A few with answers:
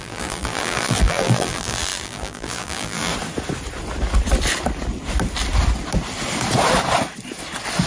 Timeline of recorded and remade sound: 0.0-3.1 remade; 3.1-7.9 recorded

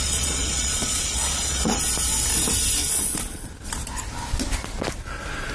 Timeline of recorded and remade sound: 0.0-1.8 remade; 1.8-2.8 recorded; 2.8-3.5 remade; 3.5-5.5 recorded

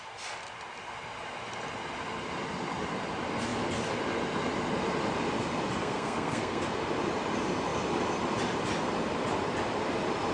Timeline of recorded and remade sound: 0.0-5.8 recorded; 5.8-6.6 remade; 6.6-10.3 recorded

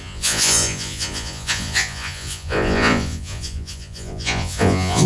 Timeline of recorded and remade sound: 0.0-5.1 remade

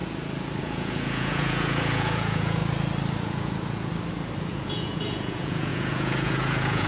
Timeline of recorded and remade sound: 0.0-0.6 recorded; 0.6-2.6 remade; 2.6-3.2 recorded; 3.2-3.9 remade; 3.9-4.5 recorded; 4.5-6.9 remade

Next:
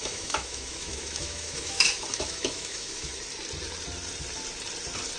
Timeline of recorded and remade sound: 0.0-3.1 remade; 3.1-5.2 recorded

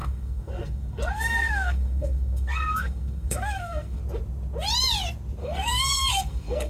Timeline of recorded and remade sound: 0.0-4.0 remade; 4.0-5.4 recorded; 5.4-6.7 remade

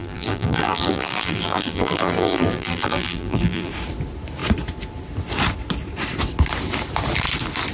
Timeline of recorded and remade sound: 0.0-3.7 remade; 3.7-7.7 recorded